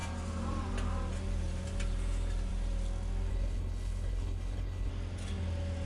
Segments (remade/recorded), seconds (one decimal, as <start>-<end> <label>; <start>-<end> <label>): 0.0-3.3 recorded; 3.3-4.9 remade; 4.9-5.9 recorded